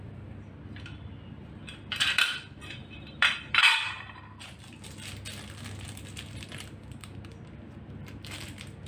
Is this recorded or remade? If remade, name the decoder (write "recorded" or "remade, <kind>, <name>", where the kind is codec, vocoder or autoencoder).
remade, vocoder, BigVGAN v2